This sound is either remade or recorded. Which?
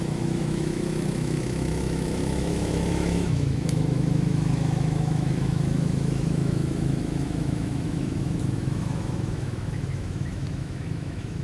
remade